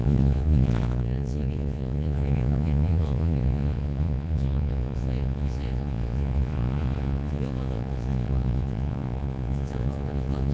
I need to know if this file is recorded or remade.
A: remade